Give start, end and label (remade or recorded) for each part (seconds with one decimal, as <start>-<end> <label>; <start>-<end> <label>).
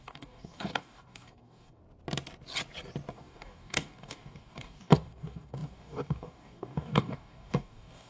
0.0-1.8 remade; 1.8-3.1 recorded; 3.1-8.1 remade